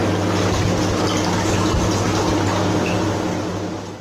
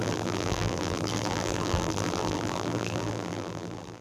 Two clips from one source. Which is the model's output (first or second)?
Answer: second